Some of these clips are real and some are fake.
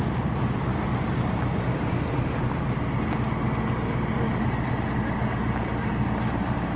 real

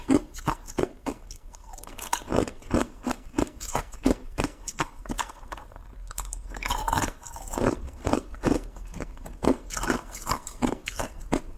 fake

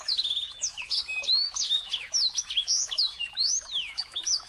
fake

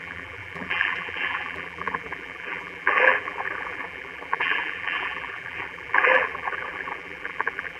fake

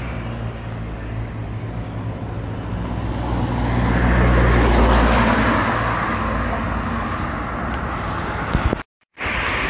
real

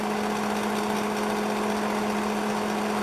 real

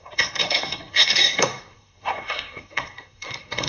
fake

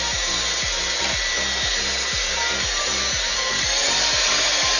real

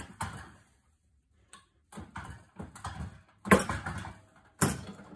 real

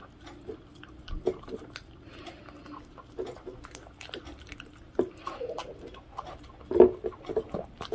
real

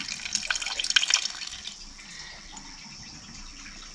real